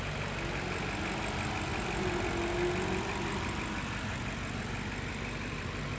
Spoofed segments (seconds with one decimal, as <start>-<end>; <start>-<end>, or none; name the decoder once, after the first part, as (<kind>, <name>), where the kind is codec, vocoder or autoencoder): none